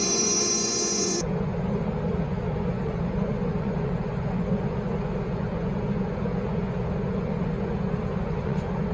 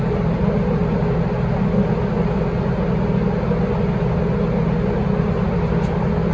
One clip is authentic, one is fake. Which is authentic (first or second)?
second